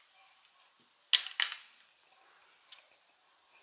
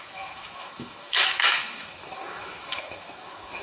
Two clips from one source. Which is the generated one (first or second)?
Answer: second